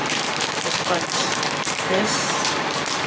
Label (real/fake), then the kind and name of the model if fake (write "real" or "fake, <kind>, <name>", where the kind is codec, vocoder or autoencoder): fake, vocoder, BigVGAN v2